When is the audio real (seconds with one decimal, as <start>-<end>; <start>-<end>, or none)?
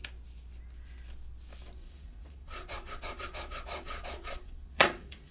0.0-1.8